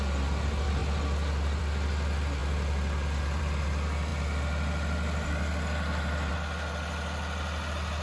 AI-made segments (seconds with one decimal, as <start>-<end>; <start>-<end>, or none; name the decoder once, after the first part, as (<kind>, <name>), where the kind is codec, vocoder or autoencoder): none